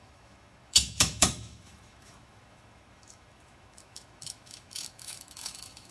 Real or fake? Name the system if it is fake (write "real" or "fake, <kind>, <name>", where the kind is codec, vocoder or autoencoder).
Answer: fake, autoencoder, DAC-VAE